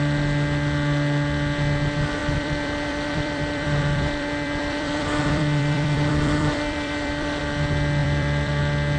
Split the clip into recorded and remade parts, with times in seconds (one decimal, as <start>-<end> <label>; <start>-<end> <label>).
0.0-2.2 recorded; 2.2-7.4 remade; 7.4-8.0 recorded; 8.0-8.6 remade; 8.6-9.0 recorded